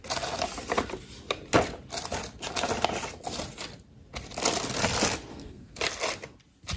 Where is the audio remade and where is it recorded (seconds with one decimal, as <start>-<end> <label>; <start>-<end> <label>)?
0.0-5.3 recorded; 5.3-5.8 remade; 5.8-6.8 recorded